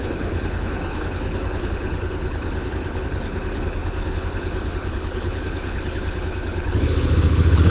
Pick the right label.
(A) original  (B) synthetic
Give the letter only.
B